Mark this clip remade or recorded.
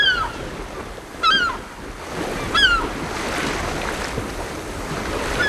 recorded